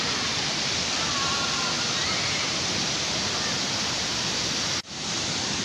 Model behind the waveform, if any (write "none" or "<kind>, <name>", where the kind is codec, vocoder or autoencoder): none